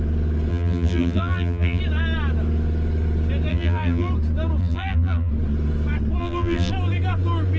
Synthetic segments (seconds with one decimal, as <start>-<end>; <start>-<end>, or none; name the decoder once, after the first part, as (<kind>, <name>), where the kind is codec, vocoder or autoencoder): 0.5-1.8 (vocoder, BigVGAN v2); 3.5-4.1; 4.6-5.3; 6.2-6.7